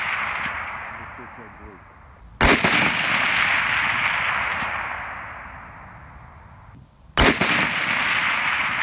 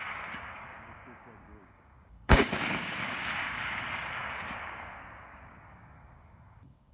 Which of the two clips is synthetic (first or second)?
second